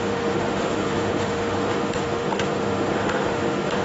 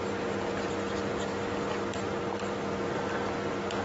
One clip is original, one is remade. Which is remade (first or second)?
first